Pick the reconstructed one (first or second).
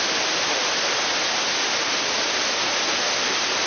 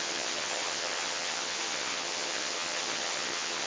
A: second